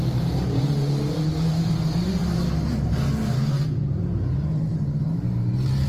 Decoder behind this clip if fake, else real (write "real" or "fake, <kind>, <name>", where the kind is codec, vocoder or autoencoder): fake, vocoder, BigVGAN v2